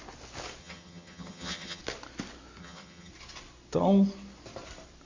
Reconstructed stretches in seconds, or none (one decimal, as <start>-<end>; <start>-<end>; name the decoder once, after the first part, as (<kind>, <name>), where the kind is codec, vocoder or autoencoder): 0.6-1.8 (vocoder, HiFi-GAN); 2.6-3.1